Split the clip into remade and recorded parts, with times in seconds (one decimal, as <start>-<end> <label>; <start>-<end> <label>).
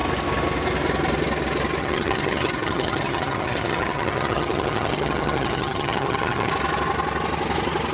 0.0-1.8 recorded; 1.8-6.5 remade; 6.5-7.9 recorded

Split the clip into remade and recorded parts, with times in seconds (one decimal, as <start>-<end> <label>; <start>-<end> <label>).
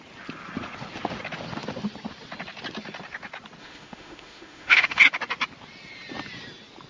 0.0-3.6 recorded; 3.6-5.0 remade; 5.0-6.9 recorded